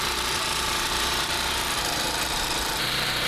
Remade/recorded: remade